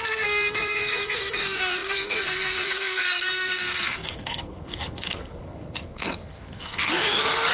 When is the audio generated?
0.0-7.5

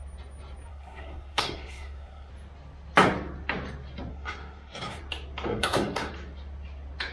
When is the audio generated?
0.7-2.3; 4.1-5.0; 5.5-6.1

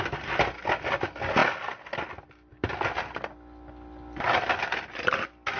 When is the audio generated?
none

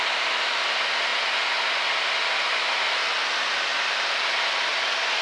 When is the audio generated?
none

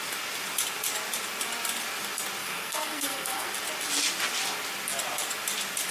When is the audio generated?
2.4-3.5

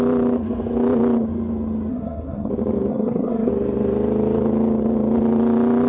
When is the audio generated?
1.9-2.5; 2.9-3.5

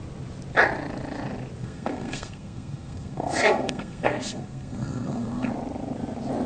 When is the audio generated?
1.6-5.5